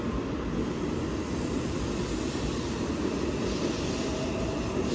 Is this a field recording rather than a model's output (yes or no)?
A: yes